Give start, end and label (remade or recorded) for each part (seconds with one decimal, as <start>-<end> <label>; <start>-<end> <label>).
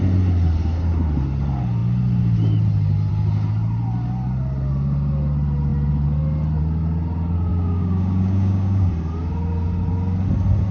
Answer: 0.0-7.5 recorded; 7.5-8.9 remade; 8.9-10.7 recorded